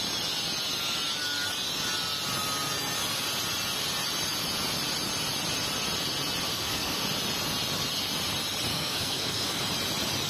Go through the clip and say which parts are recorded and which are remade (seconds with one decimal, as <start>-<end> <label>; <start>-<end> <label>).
0.0-6.5 recorded; 6.5-7.0 remade; 7.0-8.7 recorded; 8.7-9.6 remade; 9.6-10.3 recorded